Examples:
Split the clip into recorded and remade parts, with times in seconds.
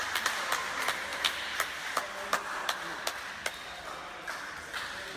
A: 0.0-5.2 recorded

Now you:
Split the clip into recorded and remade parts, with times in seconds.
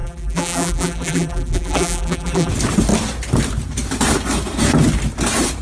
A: 0.0-2.5 remade; 2.5-5.6 recorded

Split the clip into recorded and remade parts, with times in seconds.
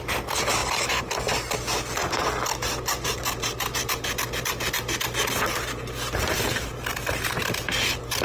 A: 0.0-8.2 recorded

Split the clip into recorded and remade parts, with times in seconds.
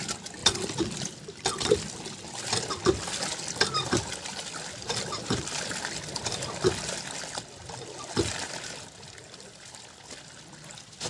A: 0.0-11.1 recorded